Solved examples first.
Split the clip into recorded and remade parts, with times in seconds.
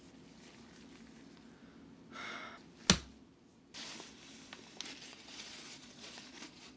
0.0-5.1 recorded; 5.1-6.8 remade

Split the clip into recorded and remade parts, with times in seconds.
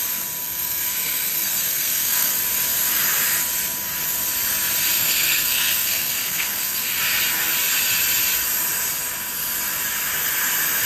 0.0-0.4 recorded; 0.4-2.3 remade; 2.3-4.9 recorded; 4.9-7.0 remade; 7.0-10.9 recorded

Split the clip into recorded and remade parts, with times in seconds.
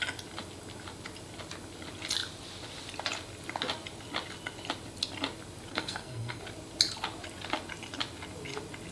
0.0-5.7 recorded; 5.7-6.4 remade; 6.4-8.9 recorded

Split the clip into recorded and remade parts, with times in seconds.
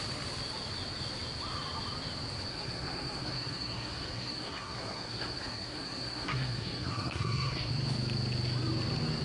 0.0-2.5 recorded; 2.5-7.7 remade; 7.7-9.2 recorded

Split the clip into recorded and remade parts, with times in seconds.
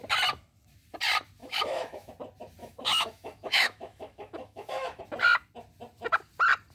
0.0-1.4 recorded; 1.4-2.1 remade; 2.1-2.6 recorded; 2.6-5.0 remade; 5.0-6.7 recorded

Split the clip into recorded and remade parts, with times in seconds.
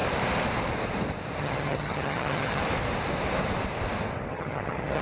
0.0-1.4 recorded; 1.4-2.6 remade; 2.6-4.3 recorded; 4.3-5.0 remade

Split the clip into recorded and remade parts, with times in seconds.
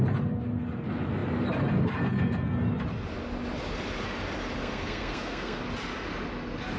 0.0-4.6 recorded; 4.6-5.6 remade; 5.6-6.8 recorded